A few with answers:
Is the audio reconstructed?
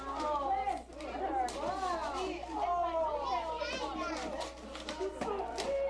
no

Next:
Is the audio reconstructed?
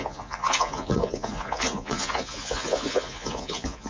yes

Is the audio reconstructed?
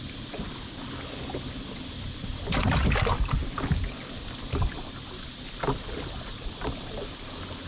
no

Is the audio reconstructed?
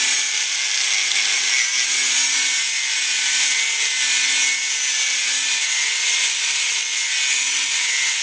no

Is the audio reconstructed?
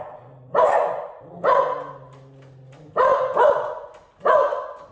no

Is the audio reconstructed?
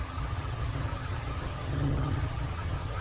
yes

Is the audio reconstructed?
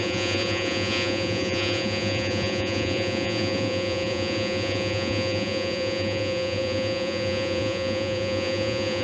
yes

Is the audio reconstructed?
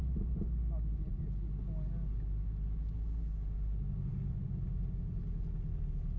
no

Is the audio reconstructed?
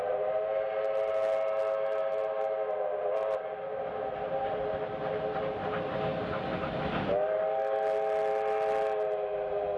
no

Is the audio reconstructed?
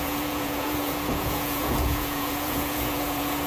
yes